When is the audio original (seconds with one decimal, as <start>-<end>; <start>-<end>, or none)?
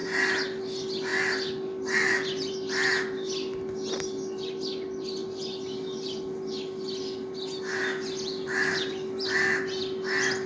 0.0-10.5